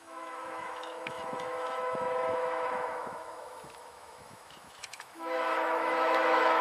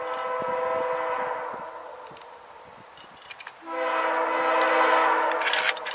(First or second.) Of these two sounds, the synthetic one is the first